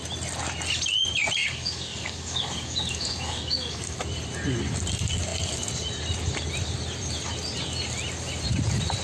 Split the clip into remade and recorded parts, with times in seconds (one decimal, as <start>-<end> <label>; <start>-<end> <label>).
0.0-1.4 recorded; 1.4-4.0 remade; 4.0-9.0 recorded